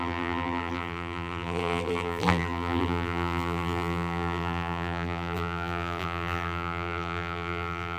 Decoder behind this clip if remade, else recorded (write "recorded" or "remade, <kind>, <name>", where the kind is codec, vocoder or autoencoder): remade, vocoder, BigVGAN v2